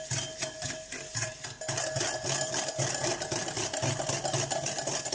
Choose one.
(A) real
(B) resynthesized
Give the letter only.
A